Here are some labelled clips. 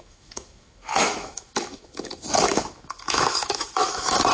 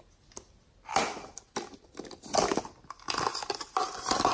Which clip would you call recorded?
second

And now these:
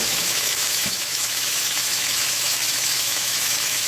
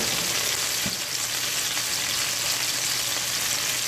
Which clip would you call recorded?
second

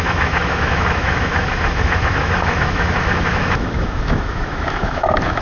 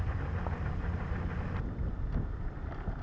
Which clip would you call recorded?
second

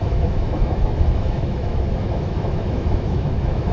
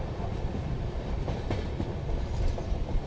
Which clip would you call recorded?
second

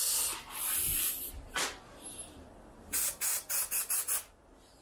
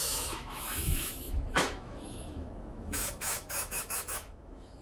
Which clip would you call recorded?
first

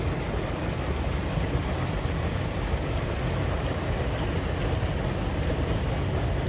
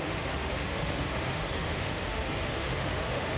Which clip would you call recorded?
first